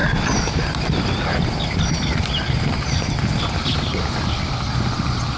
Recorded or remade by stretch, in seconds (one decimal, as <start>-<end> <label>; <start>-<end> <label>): 0.0-5.4 recorded